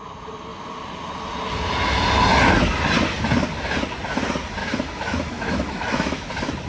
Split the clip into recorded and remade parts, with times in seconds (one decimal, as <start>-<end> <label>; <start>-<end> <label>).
0.0-4.6 recorded; 4.6-6.3 remade; 6.3-6.7 recorded